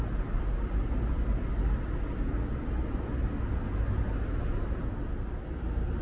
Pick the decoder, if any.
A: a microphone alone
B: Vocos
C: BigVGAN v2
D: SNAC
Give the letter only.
A